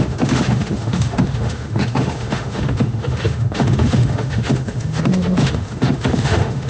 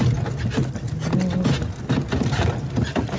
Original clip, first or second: second